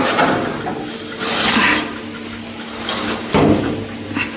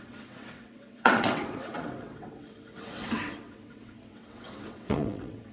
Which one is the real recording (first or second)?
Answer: first